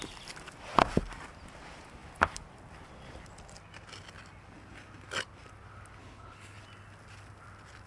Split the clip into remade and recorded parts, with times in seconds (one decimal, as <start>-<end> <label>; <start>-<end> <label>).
0.0-6.0 recorded; 6.0-6.6 remade; 6.6-7.9 recorded